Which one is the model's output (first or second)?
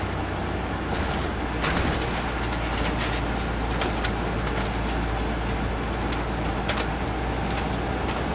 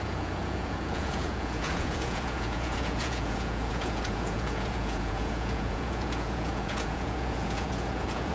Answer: second